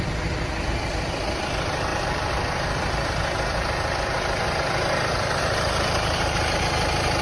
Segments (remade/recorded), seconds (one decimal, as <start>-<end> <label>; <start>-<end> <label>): 0.0-1.9 recorded; 1.9-3.1 remade; 3.1-5.4 recorded; 5.4-6.6 remade; 6.6-7.2 recorded